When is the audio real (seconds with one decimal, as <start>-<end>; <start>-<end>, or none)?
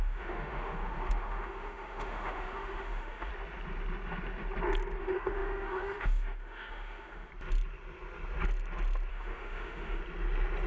3.3-5.0; 7.3-9.1; 10.0-10.7